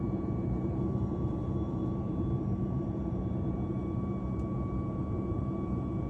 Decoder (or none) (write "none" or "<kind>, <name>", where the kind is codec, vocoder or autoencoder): vocoder, BigVGAN v2